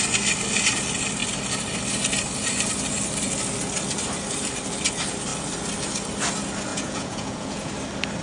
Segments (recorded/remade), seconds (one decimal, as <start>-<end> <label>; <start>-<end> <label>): 0.0-6.7 recorded; 6.7-7.7 remade; 7.7-8.2 recorded